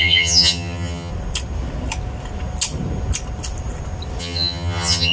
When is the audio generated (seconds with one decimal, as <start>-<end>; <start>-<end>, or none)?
0.0-1.1; 4.2-5.1